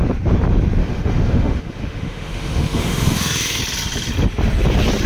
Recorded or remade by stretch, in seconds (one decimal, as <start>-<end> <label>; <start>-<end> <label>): 0.0-0.8 recorded; 0.8-3.6 remade; 3.6-5.1 recorded